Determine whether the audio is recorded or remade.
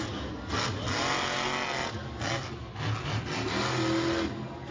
recorded